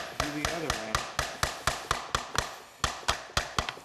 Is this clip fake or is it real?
real